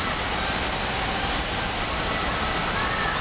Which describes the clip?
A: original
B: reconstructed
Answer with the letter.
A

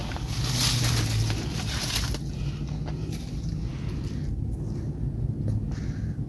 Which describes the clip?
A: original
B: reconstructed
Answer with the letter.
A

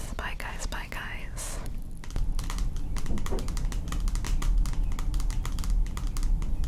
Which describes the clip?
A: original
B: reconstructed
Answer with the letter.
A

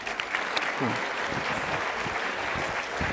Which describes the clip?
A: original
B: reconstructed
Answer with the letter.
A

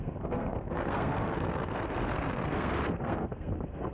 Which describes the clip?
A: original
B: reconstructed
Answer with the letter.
B